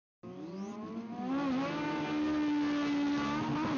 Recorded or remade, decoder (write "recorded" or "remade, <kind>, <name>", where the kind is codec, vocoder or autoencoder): recorded